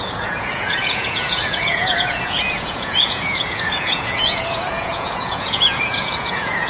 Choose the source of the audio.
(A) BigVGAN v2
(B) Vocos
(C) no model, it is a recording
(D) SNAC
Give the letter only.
B